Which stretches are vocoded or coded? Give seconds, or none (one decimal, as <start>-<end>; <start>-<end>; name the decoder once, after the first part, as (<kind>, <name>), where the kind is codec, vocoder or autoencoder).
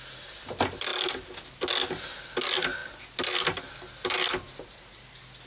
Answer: none